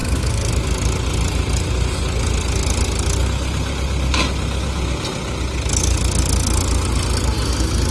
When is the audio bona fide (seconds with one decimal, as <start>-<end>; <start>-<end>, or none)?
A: 0.5-7.9

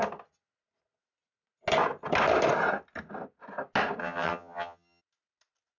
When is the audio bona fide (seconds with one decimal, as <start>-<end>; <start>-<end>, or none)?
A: 0.0-4.0; 5.0-5.8

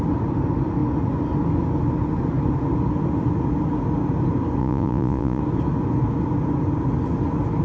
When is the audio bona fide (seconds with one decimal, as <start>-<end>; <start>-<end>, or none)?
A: 0.0-4.6; 5.4-7.6

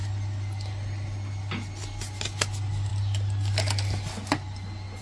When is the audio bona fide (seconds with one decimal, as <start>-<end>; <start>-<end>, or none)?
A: 0.0-5.0

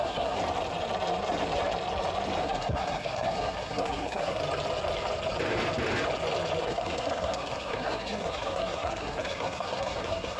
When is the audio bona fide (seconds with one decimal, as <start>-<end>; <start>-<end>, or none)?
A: 0.4-2.4; 4.4-6.6

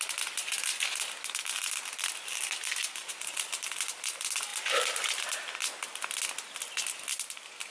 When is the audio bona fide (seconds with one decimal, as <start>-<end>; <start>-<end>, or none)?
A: 0.0-3.0; 3.8-7.7